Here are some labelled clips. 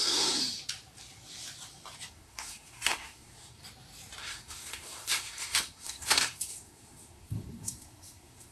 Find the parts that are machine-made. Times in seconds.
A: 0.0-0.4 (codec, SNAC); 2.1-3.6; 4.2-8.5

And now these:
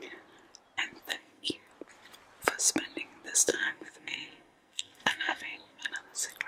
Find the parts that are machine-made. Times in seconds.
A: 1.1-1.7 (codec, SNAC); 3.5-5.9